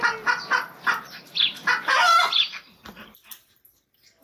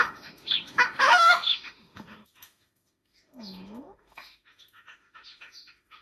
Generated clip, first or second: second